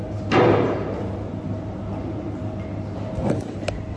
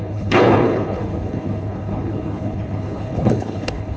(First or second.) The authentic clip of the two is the first